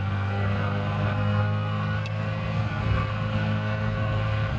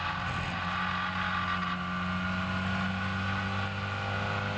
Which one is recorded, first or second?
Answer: second